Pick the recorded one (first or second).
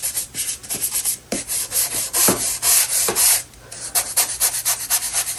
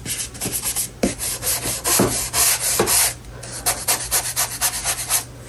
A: second